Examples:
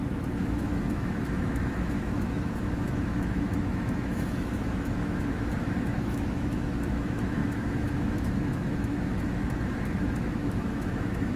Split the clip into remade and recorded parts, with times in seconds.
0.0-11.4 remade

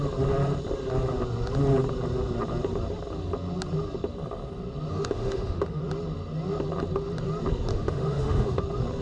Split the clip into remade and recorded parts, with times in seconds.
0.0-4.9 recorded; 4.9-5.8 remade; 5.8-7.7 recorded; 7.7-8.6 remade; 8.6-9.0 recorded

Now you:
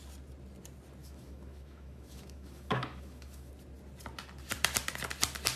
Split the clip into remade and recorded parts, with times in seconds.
0.0-1.0 recorded; 1.0-3.5 remade; 3.5-5.6 recorded

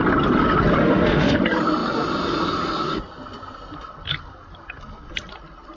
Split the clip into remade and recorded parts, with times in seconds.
0.0-0.8 recorded; 0.8-1.4 remade; 1.4-5.8 recorded

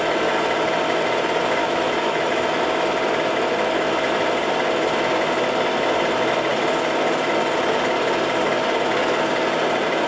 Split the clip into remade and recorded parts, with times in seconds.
0.0-1.6 recorded; 1.6-2.6 remade; 2.6-10.1 recorded

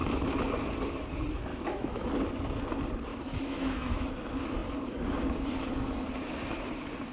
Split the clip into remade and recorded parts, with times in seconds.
0.0-1.5 recorded; 1.5-2.1 remade; 2.1-3.1 recorded; 3.1-4.1 remade; 4.1-7.1 recorded

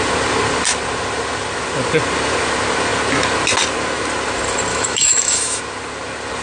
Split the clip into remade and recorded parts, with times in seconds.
0.0-4.7 recorded; 4.7-5.6 remade; 5.6-6.4 recorded

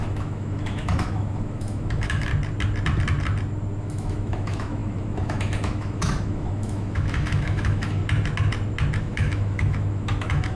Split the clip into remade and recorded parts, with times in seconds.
0.0-2.3 remade; 2.3-3.8 recorded; 3.8-8.0 remade; 8.0-9.0 recorded; 9.0-10.6 remade